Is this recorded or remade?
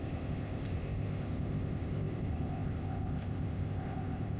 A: remade